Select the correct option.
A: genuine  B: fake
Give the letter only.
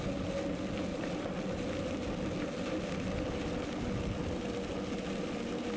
A